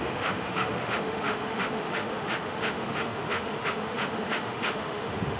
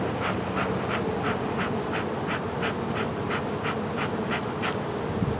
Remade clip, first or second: first